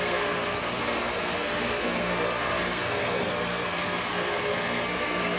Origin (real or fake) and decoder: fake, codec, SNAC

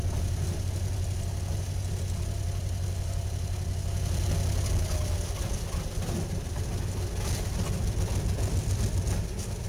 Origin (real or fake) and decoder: real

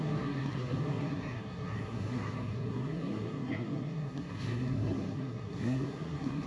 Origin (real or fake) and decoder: fake, codec, SNAC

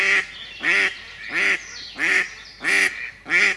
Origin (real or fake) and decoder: real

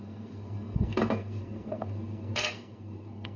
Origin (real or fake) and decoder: fake, codec, SNAC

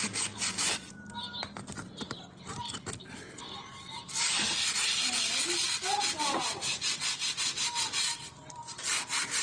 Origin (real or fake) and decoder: real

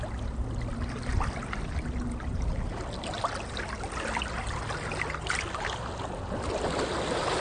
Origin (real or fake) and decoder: real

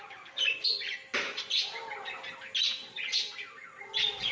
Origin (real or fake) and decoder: real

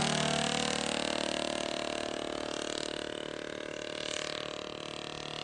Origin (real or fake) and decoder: real